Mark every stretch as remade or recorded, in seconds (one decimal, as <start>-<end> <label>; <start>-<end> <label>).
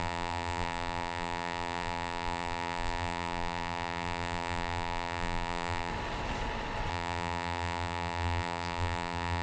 0.0-5.9 remade; 5.9-6.9 recorded; 6.9-9.4 remade